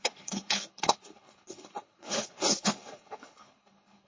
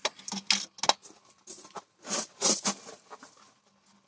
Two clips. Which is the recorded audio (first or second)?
second